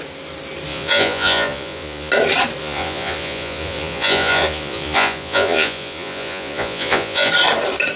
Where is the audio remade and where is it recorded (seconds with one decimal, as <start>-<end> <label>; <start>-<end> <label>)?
0.0-0.7 recorded; 0.7-2.1 remade; 2.1-2.6 recorded; 2.6-7.3 remade; 7.3-8.0 recorded